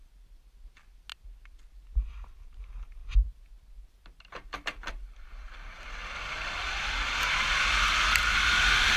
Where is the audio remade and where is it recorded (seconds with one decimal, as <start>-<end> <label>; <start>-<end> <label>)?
0.0-9.0 recorded